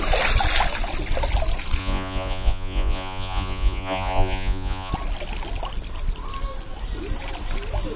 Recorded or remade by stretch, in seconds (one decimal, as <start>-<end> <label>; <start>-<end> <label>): 0.0-1.8 recorded; 1.8-4.9 remade; 4.9-8.0 recorded